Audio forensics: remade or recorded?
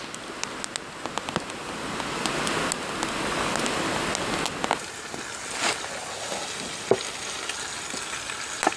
recorded